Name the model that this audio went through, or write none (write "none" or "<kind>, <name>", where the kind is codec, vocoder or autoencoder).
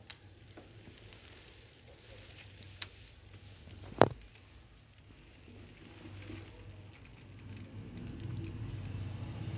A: none